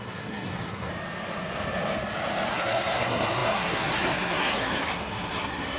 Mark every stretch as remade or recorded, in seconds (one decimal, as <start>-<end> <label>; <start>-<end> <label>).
0.0-0.9 remade; 0.9-2.5 recorded; 2.5-5.8 remade